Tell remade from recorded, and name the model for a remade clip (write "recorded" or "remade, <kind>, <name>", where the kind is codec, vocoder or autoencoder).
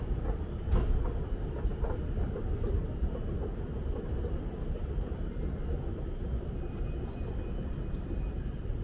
remade, vocoder, BigVGAN v2